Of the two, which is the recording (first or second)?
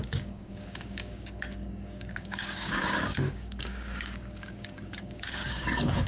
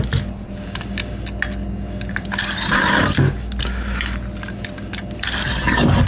second